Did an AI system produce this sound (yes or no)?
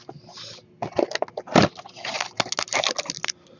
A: no